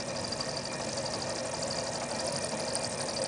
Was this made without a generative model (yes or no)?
yes